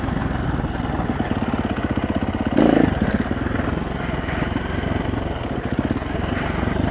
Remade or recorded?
recorded